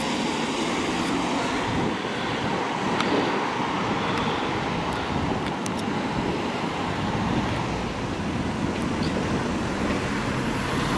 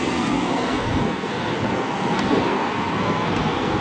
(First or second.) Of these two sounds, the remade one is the second